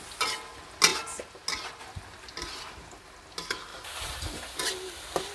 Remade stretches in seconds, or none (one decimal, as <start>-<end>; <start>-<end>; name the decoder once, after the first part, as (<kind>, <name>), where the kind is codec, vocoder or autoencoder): 3.7-4.7 (vocoder, BigVGAN v2)